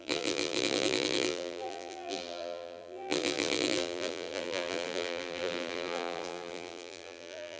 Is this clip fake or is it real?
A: fake